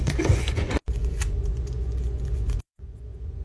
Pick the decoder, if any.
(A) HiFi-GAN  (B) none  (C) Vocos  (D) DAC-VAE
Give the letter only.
C